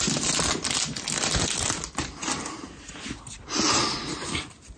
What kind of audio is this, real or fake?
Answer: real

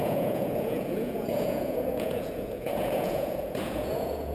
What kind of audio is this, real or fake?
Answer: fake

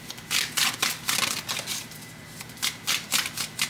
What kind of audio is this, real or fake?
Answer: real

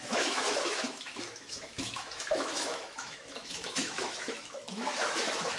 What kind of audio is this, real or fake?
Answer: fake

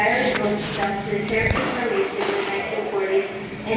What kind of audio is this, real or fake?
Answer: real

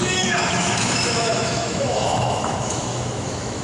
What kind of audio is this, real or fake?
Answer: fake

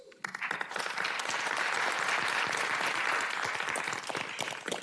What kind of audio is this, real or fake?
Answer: real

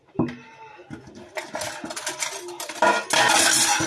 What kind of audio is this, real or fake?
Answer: real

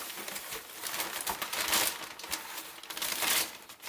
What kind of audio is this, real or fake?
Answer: real